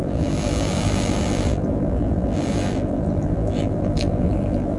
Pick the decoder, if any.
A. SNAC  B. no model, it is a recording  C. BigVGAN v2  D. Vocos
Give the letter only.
C